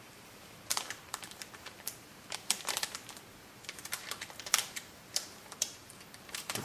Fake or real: fake